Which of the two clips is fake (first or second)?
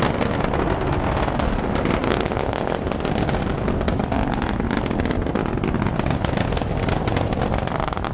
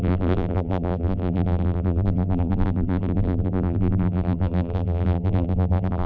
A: second